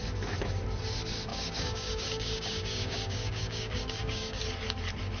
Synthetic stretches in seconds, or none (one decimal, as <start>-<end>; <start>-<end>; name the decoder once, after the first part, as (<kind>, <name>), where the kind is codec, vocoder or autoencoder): 1.3-4.4 (codec, DAC)